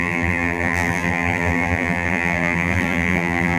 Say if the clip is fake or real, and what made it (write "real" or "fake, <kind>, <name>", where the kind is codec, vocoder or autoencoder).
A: fake, vocoder, BigVGAN v2